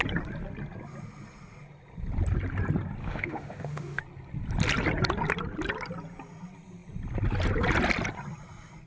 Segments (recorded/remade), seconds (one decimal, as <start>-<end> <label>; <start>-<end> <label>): 0.0-3.0 recorded; 3.0-4.0 remade; 4.0-8.9 recorded